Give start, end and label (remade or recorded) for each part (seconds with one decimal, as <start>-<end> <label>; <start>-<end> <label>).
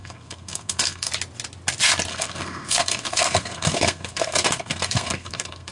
0.0-1.1 remade; 1.1-2.1 recorded; 2.1-5.7 remade